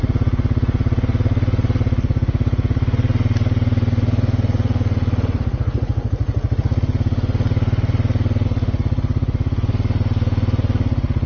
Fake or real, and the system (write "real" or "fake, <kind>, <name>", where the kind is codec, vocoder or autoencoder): real